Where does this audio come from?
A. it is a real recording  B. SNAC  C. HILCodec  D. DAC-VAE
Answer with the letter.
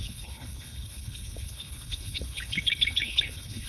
C